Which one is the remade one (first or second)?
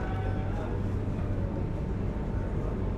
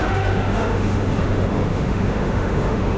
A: second